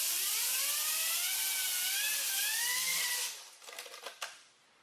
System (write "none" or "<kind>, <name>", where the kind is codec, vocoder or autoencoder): vocoder, BigVGAN v2